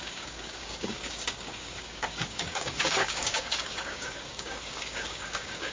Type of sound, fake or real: fake